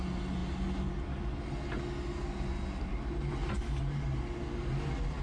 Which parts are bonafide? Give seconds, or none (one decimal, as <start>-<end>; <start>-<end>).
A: 0.0-5.2